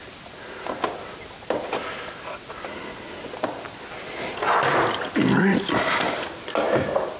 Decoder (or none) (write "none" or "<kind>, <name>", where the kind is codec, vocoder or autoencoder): none